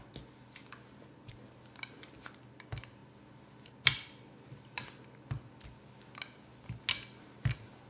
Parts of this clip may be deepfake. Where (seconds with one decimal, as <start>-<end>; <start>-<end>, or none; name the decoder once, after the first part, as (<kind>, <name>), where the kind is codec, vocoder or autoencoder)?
none